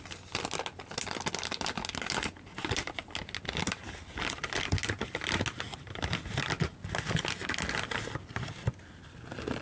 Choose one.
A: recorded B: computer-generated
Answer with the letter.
A